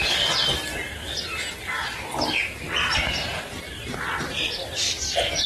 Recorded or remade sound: recorded